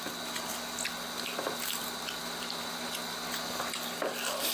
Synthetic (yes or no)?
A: no